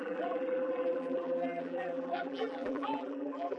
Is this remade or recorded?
remade